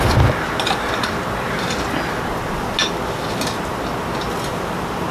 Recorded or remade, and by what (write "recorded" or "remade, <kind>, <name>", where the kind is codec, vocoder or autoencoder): recorded